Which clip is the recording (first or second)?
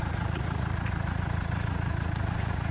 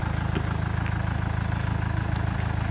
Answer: second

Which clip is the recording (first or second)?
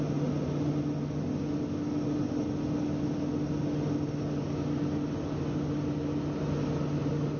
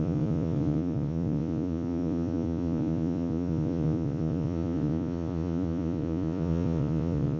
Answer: first